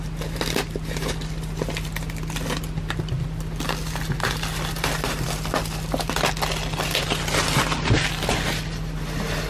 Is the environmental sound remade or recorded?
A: remade